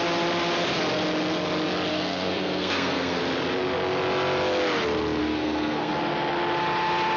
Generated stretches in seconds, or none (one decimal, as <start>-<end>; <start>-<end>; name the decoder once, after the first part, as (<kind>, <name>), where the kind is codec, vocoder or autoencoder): 1.9-3.2 (codec, SNAC); 5.2-5.9